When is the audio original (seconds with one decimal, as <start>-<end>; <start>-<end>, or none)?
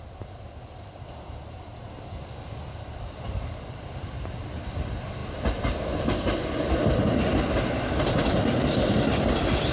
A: 0.0-9.7